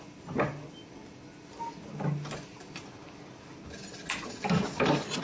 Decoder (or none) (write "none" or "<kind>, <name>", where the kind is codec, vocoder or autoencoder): none